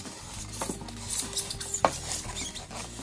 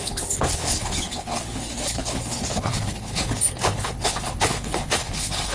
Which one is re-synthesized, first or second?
second